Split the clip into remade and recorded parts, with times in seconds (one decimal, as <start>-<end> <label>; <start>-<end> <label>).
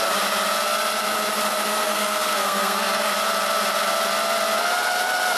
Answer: 0.0-1.8 recorded; 1.8-3.1 remade; 3.1-5.4 recorded